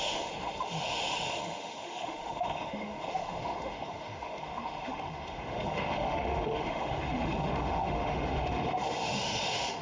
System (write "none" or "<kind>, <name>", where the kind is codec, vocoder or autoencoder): autoencoder, DAC-VAE